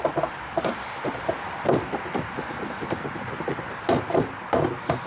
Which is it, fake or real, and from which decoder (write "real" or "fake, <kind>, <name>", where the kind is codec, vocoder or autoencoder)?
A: real